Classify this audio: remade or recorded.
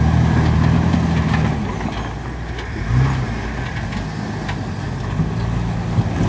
recorded